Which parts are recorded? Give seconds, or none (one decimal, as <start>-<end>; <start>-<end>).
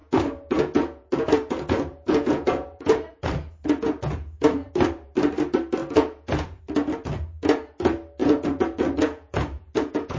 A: 4.7-5.8; 6.6-8.2